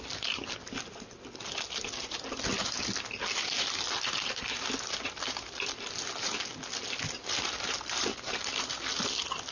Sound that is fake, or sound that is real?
real